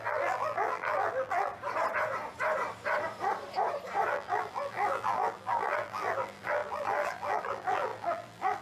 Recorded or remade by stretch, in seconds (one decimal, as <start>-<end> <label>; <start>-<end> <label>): 0.0-1.5 remade; 1.5-4.1 recorded; 4.1-8.6 remade